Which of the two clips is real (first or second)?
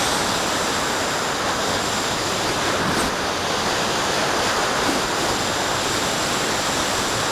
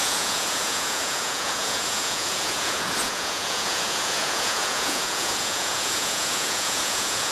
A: first